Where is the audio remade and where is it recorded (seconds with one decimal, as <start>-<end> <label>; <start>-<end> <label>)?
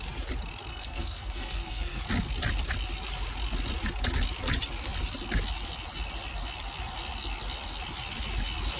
0.0-0.7 recorded; 0.7-2.0 remade; 2.0-8.8 recorded